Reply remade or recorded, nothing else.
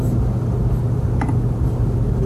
recorded